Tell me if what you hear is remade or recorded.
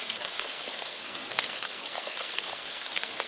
remade